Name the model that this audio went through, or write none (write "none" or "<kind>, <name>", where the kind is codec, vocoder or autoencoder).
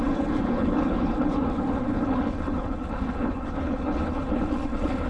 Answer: codec, HILCodec